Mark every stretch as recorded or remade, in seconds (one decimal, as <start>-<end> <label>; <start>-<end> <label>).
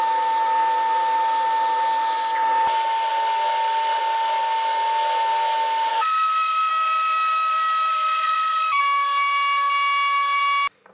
0.0-5.9 recorded; 5.9-6.7 remade; 6.7-7.9 recorded; 7.9-8.8 remade; 8.8-10.9 recorded